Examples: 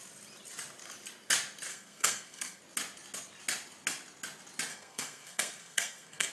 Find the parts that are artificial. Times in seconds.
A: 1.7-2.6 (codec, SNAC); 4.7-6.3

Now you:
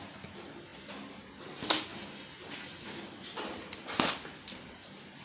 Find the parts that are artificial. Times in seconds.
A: none

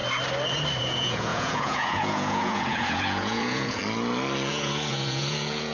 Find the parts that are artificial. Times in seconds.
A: 0.8-3.8 (vocoder, Vocos); 4.5-5.7

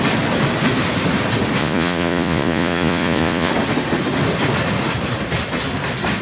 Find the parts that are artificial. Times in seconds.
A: 1.6-3.5 (vocoder, Vocos)

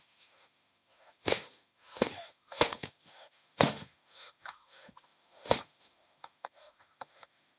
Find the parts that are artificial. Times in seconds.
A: 0.0-7.6 (autoencoder, DAC-VAE)